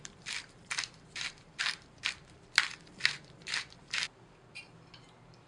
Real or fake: fake